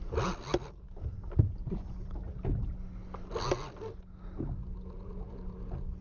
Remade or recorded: recorded